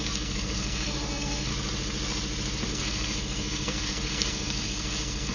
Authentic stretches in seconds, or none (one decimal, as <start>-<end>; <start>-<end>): 1.5-2.7